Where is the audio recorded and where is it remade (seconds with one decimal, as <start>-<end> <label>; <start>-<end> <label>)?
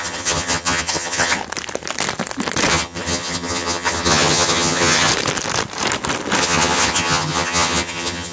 0.0-1.4 remade; 1.4-2.7 recorded; 2.7-5.1 remade; 5.1-6.4 recorded; 6.4-8.3 remade